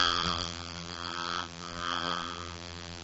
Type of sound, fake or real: fake